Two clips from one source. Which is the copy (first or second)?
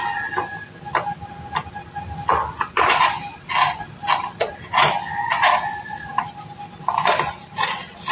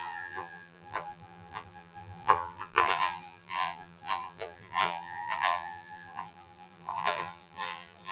second